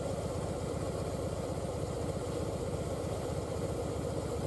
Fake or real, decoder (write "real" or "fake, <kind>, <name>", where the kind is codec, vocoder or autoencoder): real